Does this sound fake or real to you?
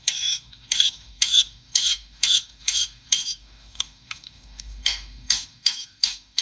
fake